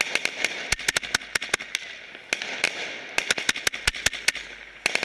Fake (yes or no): no